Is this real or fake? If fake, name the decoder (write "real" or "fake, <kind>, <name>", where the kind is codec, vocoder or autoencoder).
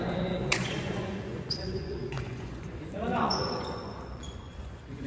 fake, vocoder, Vocos